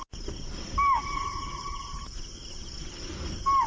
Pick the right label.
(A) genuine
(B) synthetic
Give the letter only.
A